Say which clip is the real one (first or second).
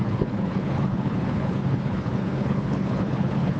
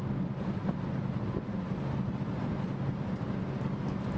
second